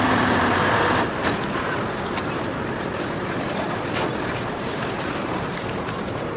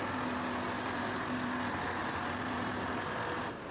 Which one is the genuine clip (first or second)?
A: second